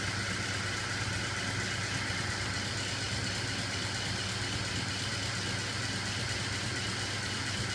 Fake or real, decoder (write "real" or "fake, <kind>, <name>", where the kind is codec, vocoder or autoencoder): real